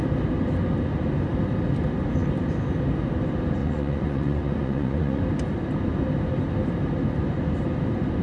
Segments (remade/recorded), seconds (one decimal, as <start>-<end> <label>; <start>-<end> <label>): 0.0-3.6 recorded; 3.6-5.2 remade; 5.2-8.2 recorded